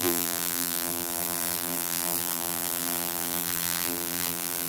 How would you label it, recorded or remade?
remade